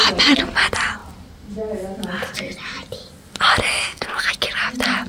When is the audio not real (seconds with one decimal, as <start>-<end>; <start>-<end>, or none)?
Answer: 3.7-4.3